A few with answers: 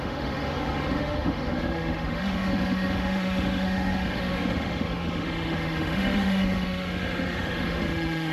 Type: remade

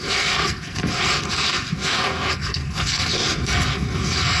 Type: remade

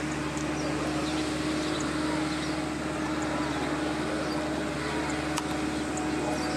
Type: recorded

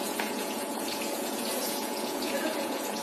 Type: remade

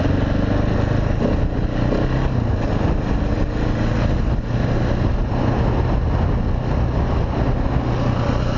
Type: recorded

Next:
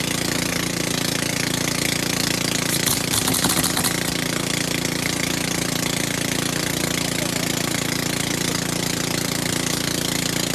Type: recorded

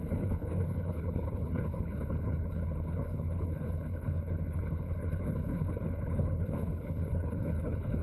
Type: remade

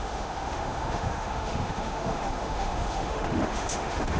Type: remade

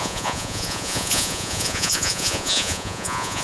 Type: remade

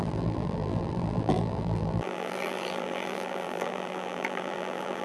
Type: remade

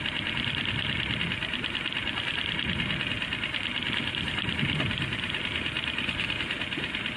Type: recorded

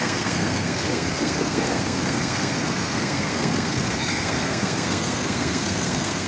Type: remade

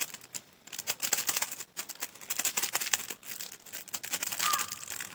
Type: recorded